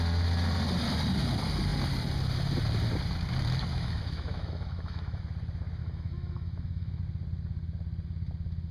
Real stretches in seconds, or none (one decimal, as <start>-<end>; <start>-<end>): 0.0-3.7; 5.2-5.8; 7.0-8.7